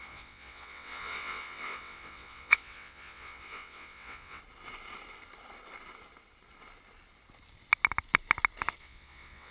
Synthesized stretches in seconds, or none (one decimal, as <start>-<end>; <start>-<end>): 0.0-4.4; 8.8-9.5